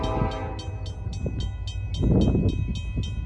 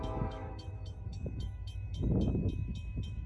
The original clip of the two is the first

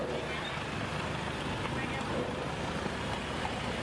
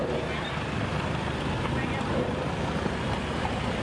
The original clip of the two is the first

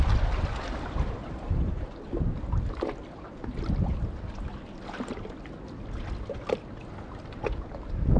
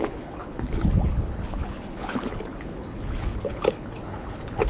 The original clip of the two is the first